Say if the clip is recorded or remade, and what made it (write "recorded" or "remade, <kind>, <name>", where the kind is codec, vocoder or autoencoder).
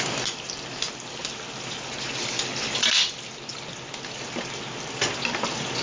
recorded